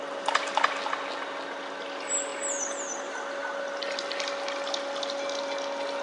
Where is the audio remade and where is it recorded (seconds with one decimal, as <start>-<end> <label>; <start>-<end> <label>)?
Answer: 0.0-6.0 recorded